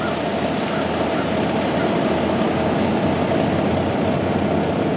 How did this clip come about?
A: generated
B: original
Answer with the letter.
B